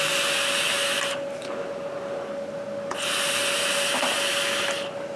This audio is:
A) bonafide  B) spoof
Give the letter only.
A